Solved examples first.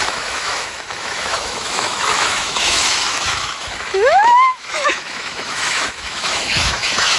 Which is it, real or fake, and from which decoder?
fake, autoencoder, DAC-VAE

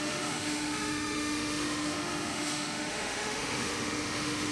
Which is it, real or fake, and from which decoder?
fake, autoencoder, DAC-VAE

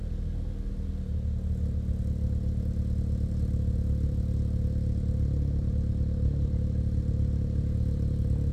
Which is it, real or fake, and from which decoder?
real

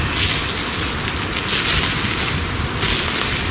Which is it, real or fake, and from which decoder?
real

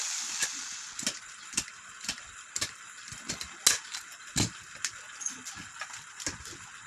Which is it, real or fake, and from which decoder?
real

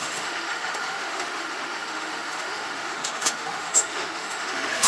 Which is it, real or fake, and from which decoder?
fake, autoencoder, DAC-VAE